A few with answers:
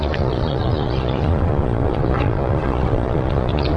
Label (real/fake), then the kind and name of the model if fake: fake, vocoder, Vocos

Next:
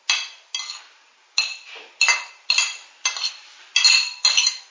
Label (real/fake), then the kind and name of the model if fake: real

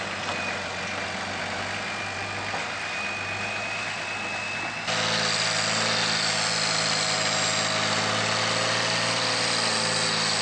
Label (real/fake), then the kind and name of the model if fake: real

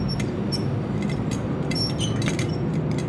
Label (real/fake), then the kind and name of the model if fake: real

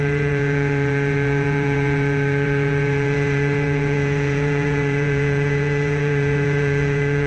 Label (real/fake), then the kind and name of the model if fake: fake, vocoder, Vocos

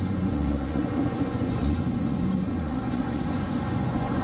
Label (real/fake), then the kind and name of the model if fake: fake, vocoder, Vocos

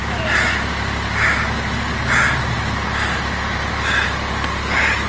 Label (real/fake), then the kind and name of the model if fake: real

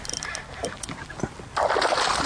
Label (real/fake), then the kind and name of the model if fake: real